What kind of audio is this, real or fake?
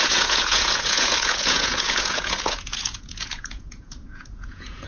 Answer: fake